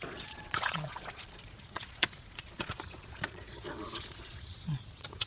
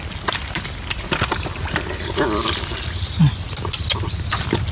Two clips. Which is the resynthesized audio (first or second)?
first